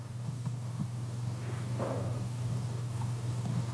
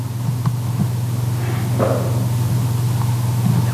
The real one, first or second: second